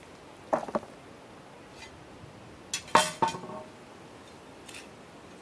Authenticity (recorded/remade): recorded